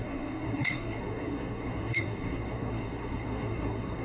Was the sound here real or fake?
fake